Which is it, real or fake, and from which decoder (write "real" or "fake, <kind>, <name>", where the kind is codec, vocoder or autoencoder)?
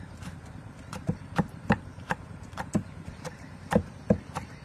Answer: fake, vocoder, BigVGAN v2